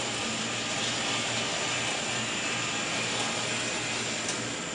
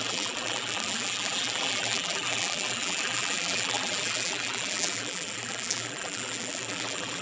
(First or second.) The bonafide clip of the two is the first